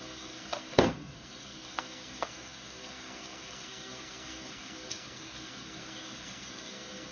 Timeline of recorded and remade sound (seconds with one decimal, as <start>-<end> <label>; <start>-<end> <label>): 0.0-7.1 remade